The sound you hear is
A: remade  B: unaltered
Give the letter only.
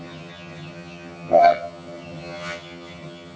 A